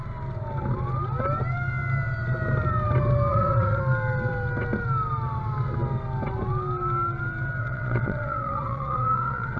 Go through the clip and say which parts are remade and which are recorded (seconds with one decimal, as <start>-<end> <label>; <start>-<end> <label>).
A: 0.0-3.3 recorded; 3.3-3.8 remade; 3.8-7.6 recorded; 7.6-9.6 remade